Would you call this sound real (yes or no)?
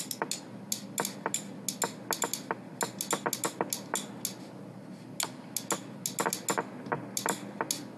yes